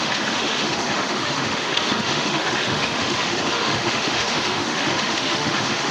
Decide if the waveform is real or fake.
fake